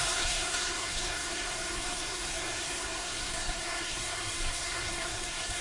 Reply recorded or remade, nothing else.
remade